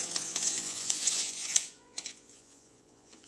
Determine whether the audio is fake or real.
fake